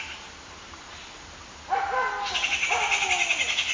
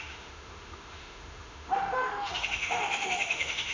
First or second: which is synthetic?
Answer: second